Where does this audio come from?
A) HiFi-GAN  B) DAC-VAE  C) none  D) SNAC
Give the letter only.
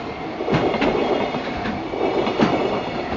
C